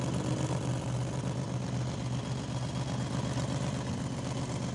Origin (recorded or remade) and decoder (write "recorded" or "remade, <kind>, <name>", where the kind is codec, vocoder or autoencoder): recorded